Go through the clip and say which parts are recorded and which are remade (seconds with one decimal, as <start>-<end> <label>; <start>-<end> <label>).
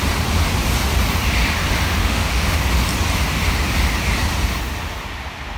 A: 0.0-2.0 recorded; 2.0-2.6 remade; 2.6-5.6 recorded